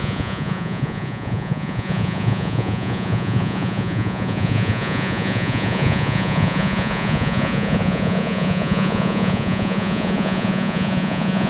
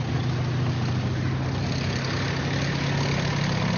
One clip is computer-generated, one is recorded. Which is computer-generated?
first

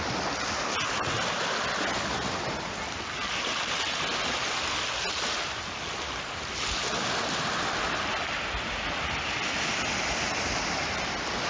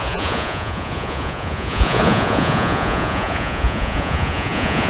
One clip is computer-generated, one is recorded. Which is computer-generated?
second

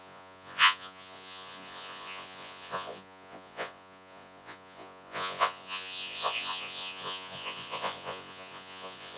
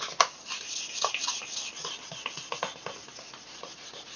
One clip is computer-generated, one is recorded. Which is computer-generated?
first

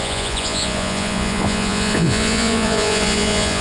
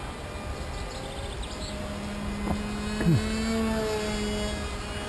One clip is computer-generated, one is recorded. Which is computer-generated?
first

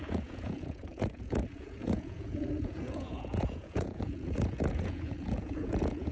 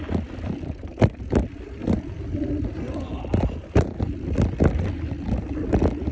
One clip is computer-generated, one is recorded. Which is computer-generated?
first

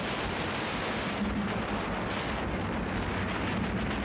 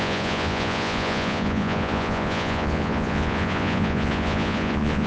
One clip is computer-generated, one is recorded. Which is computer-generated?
second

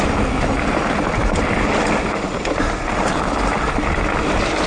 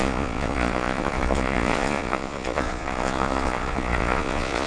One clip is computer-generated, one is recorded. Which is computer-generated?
second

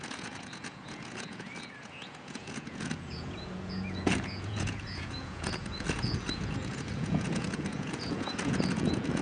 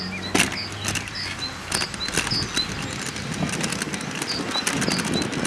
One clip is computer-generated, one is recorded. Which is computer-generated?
first